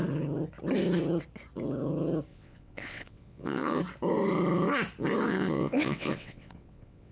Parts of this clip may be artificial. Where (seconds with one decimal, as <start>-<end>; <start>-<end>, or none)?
2.3-3.8; 5.3-7.1